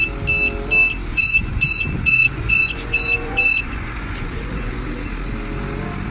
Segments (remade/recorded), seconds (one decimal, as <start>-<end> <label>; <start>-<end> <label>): 0.0-1.1 recorded; 1.1-4.8 remade; 4.8-6.1 recorded